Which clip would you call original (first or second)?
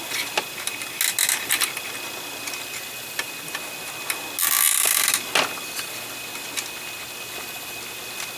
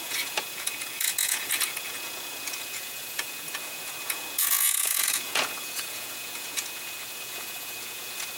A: first